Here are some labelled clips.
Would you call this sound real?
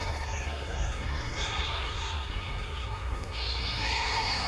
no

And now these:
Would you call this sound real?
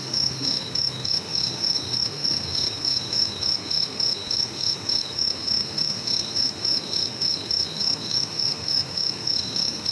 no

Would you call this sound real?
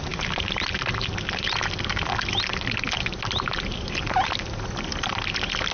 yes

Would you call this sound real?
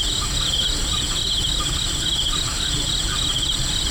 yes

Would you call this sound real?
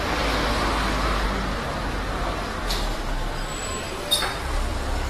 yes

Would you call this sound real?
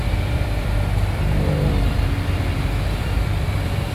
no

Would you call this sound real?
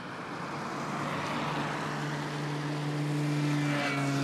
yes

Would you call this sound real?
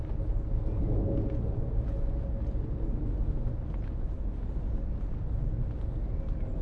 yes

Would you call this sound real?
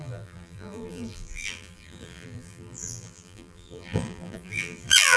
no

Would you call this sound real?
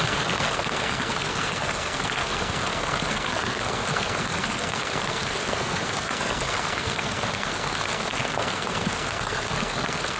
no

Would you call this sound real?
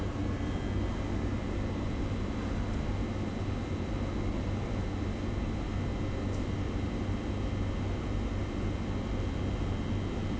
yes